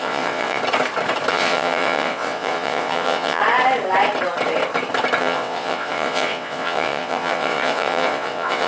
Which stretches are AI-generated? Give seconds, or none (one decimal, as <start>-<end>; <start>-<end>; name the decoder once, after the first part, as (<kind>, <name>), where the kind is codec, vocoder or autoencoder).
0.0-0.6 (vocoder, WaveNeXt); 1.3-3.4; 5.2-8.7